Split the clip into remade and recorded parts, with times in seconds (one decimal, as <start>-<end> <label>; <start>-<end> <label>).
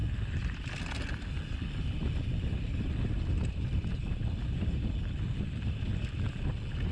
0.0-6.9 recorded